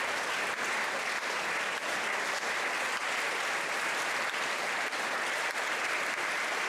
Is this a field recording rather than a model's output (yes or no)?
yes